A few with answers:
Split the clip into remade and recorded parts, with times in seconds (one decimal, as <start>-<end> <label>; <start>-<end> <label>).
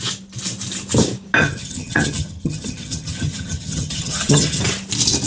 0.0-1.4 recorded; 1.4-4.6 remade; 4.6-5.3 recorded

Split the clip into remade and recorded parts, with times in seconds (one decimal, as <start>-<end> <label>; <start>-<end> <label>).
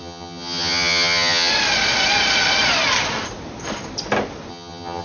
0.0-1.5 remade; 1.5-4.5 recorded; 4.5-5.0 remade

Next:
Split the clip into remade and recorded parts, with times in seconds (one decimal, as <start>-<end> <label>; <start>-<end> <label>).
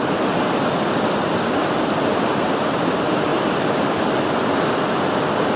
0.0-5.6 recorded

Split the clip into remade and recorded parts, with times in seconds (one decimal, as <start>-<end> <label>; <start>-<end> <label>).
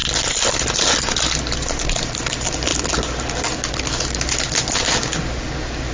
0.0-5.9 recorded